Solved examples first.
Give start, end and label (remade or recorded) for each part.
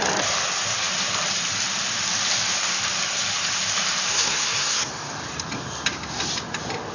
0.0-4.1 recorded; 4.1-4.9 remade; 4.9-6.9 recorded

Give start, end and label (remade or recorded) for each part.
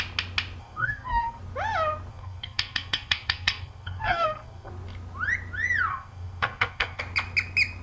0.0-0.6 recorded; 0.6-1.4 remade; 1.4-2.1 recorded; 2.1-4.7 remade; 4.7-5.9 recorded; 5.9-7.0 remade; 7.0-7.8 recorded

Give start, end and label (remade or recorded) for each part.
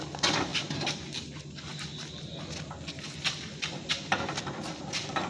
0.0-5.3 recorded